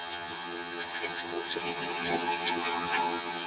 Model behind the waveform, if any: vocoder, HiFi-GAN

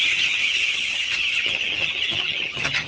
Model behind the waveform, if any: vocoder, HiFi-GAN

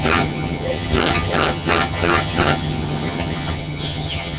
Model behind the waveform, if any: vocoder, HiFi-GAN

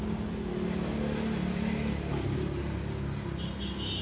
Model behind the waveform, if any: none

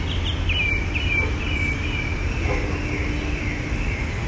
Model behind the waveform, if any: none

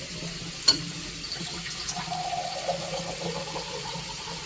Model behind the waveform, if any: none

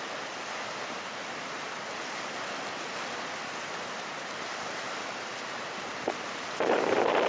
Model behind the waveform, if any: none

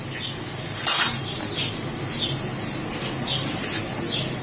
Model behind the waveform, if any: none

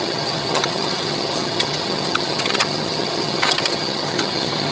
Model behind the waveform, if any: vocoder, HiFi-GAN